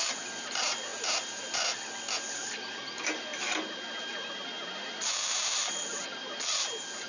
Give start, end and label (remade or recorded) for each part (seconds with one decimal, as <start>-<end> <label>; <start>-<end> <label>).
0.0-0.9 recorded; 0.9-1.4 remade; 1.4-7.1 recorded